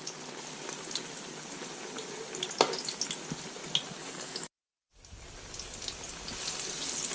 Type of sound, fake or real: real